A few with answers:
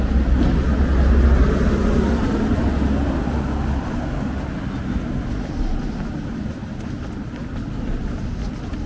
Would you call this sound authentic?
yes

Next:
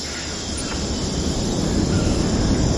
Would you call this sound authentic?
yes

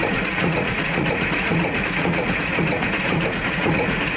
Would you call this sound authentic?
no